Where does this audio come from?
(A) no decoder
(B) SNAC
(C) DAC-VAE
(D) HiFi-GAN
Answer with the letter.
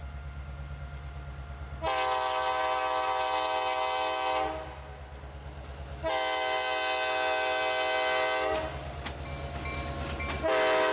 A